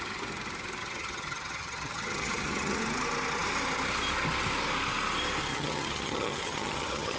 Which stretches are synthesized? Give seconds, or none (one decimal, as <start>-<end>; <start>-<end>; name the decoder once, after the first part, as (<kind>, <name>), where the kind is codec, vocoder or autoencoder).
0.8-2.8 (vocoder, HiFi-GAN); 5.5-7.2